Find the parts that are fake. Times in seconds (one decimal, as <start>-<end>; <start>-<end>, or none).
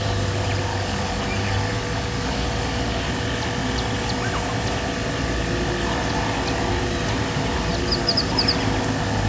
0.7-3.1